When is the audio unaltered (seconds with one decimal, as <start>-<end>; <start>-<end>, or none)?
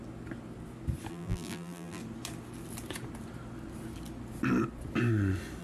0.0-1.1; 2.0-5.6